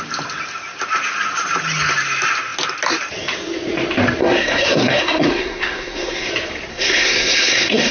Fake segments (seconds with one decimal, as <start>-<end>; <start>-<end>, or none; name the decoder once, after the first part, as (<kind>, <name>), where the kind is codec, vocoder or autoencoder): 4.2-6.3 (codec, SNAC); 6.7-7.9